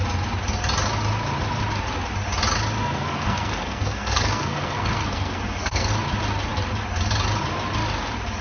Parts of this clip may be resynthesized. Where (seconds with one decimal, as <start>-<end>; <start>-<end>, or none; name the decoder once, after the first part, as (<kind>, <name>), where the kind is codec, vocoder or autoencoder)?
2.8-5.9 (codec, SNAC)